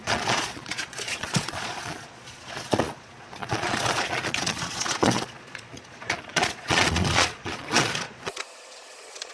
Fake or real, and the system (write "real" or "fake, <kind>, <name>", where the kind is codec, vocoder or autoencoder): fake, vocoder, Vocos